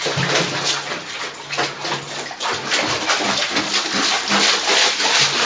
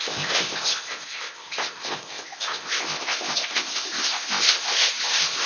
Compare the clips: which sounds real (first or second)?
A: first